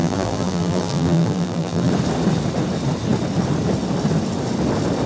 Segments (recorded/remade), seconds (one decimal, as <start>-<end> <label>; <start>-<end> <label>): 0.0-1.9 remade; 1.9-5.1 recorded